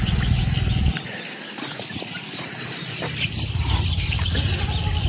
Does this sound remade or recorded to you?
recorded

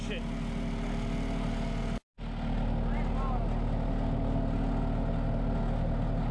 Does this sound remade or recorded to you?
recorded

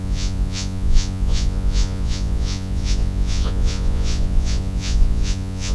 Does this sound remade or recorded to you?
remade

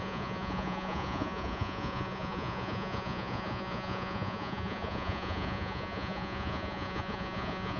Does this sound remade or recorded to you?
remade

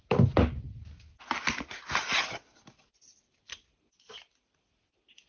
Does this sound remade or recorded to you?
recorded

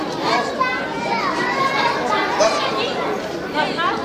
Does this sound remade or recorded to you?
recorded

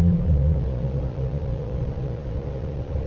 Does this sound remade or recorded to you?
remade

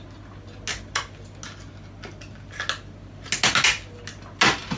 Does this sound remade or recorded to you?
recorded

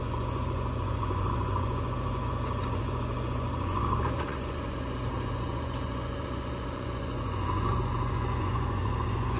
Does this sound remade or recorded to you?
remade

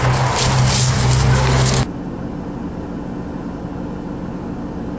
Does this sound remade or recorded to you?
recorded